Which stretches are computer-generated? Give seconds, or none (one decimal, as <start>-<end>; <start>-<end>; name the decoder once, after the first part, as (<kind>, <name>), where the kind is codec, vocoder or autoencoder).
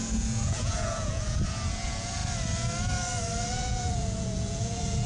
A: 0.0-2.2 (vocoder, Vocos); 3.5-5.1